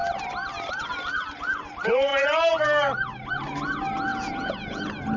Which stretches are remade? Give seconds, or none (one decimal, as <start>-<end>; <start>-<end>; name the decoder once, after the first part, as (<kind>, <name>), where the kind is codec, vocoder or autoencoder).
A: 4.1-4.8 (vocoder, Vocos)